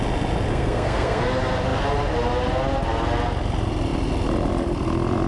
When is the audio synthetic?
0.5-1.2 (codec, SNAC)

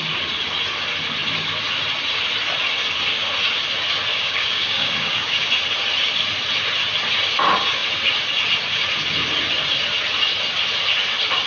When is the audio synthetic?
4.1-5.5 (codec, DAC)